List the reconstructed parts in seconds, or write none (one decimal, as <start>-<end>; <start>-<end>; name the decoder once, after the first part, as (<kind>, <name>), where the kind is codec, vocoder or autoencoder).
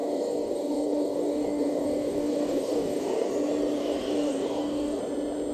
0.0-3.3 (codec, DAC); 3.8-5.0